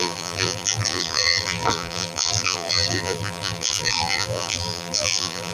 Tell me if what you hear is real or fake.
fake